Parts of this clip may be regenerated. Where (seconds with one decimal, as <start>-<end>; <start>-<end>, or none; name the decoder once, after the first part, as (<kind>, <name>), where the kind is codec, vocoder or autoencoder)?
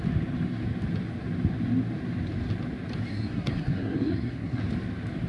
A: 3.1-4.6 (codec, SNAC)